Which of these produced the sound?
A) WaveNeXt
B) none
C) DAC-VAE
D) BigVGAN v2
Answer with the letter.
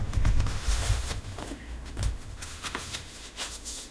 C